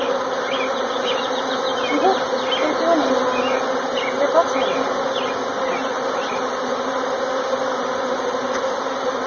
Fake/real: real